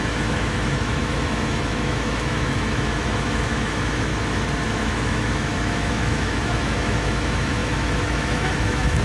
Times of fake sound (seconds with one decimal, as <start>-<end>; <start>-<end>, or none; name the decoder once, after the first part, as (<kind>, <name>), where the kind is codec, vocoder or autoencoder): 0.0-4.1 (autoencoder, DAC-VAE); 4.7-9.0